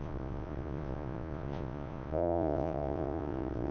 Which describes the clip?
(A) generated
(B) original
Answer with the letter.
A